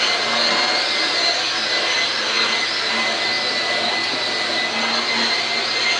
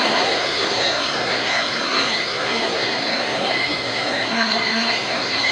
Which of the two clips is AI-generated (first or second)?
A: second